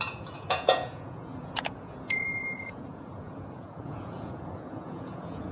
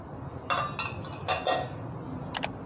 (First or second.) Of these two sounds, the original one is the second